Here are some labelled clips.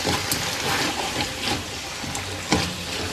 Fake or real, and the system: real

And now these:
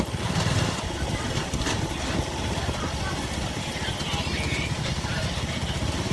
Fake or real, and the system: fake, vocoder, BigVGAN v2